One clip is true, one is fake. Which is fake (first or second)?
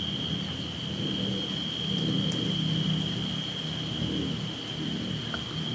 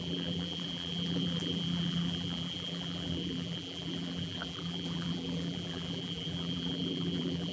second